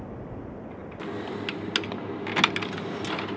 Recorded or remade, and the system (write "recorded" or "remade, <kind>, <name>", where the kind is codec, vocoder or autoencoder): recorded